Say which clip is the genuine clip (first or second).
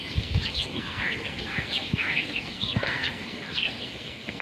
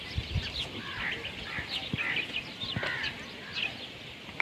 second